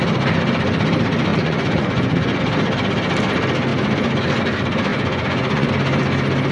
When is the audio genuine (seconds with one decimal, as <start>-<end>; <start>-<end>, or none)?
0.0-1.3; 2.4-4.9; 5.7-6.5